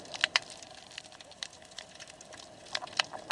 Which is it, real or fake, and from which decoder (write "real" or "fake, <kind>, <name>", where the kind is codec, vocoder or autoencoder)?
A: fake, vocoder, BigVGAN v2